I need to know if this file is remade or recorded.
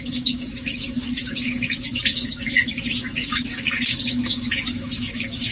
remade